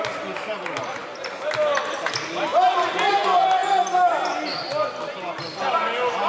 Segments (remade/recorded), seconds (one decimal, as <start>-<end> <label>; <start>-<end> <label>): 0.0-2.5 recorded; 2.5-3.1 remade; 3.1-6.3 recorded